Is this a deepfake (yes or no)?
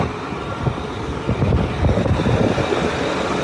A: no